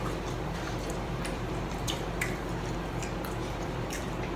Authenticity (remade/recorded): remade